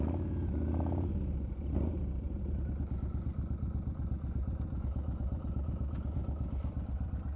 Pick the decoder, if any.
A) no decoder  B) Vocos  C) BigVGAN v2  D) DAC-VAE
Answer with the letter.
A